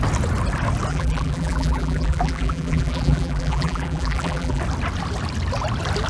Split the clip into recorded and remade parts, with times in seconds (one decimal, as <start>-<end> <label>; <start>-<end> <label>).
0.0-0.9 recorded; 0.9-4.6 remade; 4.6-6.1 recorded